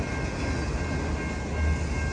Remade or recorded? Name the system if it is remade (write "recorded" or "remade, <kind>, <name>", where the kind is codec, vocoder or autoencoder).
recorded